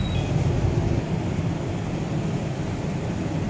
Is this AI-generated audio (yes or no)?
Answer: no